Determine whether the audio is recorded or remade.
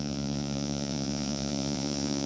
remade